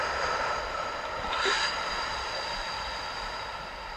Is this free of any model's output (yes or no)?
no